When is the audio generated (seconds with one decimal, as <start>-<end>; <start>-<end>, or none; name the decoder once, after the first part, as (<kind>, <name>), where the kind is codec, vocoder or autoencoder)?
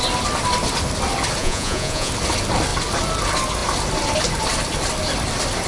1.4-2.1 (vocoder, Vocos)